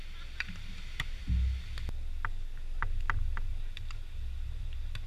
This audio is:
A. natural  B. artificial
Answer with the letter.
A